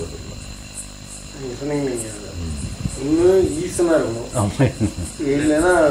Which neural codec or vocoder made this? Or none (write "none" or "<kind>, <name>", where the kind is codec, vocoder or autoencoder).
none